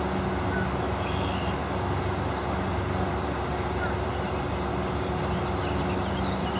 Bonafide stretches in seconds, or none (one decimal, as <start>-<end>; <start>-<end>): 0.0-6.6